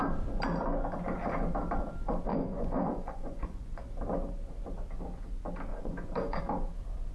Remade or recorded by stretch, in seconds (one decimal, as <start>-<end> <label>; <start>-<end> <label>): 0.0-2.3 recorded; 2.3-3.8 remade; 3.8-5.7 recorded; 5.7-6.4 remade; 6.4-7.1 recorded

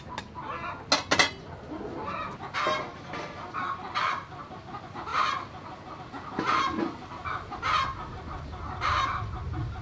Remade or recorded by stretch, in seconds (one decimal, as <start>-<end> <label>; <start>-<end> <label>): 0.0-9.8 recorded

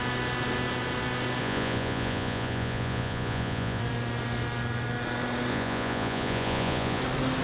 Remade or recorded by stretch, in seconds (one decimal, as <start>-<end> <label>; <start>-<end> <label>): 0.0-1.4 recorded; 1.4-3.8 remade; 3.8-5.5 recorded; 5.5-7.0 remade; 7.0-7.4 recorded

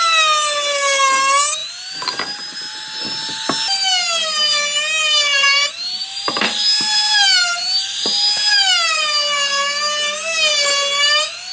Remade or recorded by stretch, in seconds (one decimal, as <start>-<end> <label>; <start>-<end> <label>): 0.0-11.5 recorded

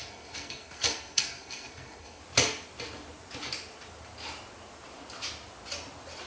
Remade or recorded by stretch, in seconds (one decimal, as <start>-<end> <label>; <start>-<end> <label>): 0.0-2.2 remade; 2.2-6.3 recorded